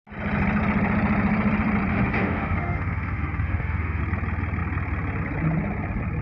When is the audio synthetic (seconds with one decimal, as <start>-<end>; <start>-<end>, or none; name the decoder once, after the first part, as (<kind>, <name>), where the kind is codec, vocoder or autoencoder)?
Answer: 1.9-4.0 (autoencoder, DAC-VAE)